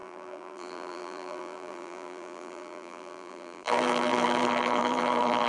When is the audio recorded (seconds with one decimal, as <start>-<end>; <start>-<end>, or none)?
none